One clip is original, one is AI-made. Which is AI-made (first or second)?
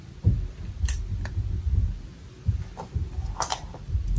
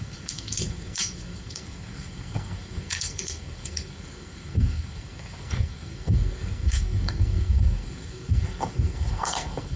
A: second